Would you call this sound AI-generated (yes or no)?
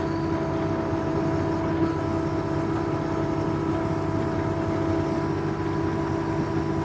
no